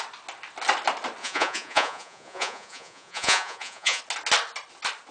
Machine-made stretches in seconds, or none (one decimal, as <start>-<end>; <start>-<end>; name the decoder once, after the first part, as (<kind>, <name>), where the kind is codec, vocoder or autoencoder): 1.2-4.0 (vocoder, Vocos)